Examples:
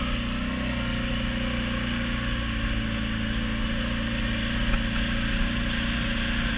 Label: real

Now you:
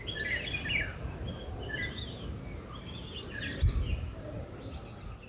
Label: real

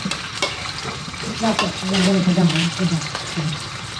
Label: fake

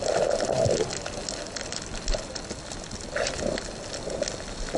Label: real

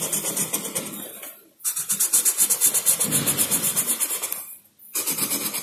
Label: fake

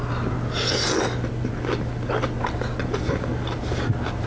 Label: real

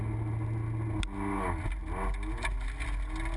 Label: real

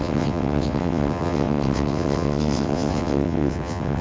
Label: fake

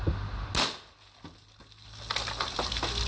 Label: real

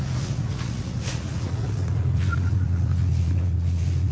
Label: fake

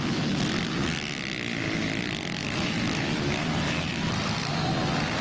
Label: real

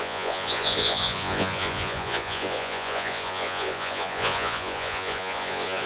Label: fake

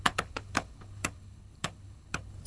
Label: fake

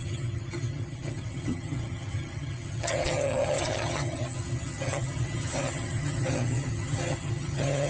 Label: fake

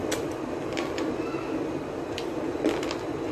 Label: real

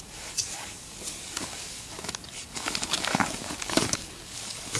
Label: fake